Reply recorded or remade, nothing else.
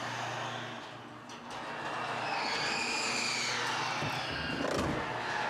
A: recorded